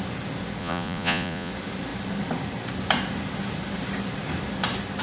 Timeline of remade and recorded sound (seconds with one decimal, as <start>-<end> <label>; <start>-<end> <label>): 0.0-0.6 recorded; 0.6-1.5 remade; 1.5-5.0 recorded